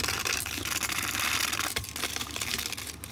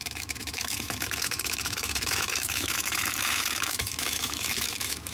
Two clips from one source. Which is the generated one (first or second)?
second